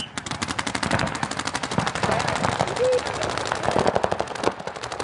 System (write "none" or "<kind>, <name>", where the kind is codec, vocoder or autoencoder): none